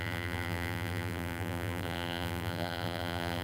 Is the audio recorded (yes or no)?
no